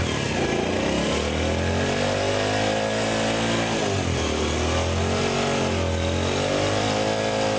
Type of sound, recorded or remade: recorded